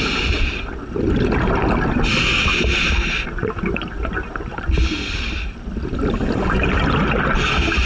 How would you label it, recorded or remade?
recorded